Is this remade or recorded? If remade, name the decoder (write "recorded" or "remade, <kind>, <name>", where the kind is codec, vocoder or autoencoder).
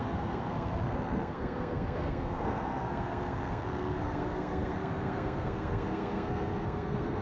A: remade, codec, SNAC